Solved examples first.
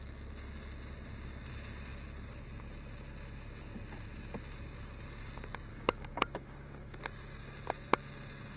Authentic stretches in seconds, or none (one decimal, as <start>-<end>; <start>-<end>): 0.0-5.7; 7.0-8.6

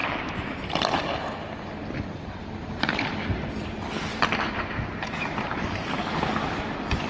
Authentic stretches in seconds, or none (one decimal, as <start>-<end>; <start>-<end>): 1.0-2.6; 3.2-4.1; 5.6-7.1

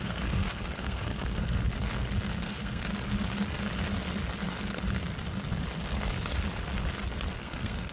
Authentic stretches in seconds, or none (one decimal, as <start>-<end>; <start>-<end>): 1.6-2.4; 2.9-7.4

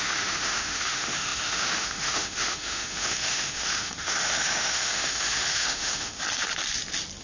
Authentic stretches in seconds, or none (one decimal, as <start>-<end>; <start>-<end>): 6.2-7.2

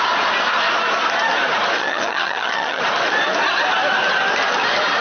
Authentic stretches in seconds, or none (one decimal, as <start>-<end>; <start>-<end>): 0.0-1.8; 2.8-5.0

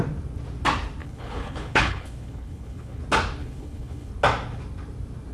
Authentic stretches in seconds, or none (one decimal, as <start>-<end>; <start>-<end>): 0.0-1.0; 3.0-3.4; 4.1-5.3

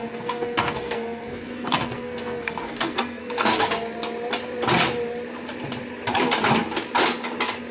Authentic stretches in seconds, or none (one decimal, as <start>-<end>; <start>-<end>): 3.7-7.7